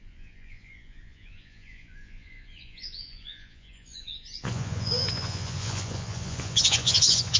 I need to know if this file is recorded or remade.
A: remade